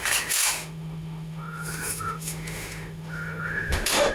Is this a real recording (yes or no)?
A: no